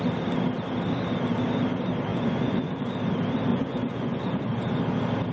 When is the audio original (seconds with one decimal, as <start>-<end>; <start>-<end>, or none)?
0.0-2.1; 2.9-3.5; 4.8-5.3